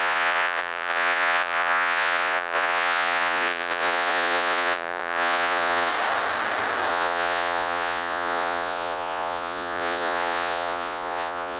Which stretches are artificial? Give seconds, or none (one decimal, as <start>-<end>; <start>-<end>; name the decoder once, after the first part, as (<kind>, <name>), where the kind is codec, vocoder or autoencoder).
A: 0.0-5.9 (vocoder, Vocos); 6.9-11.6